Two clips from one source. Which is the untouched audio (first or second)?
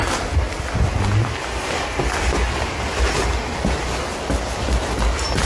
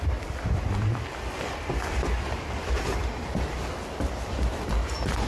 first